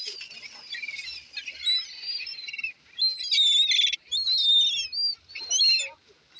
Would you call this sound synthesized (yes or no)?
no